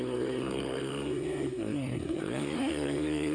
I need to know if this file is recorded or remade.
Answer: remade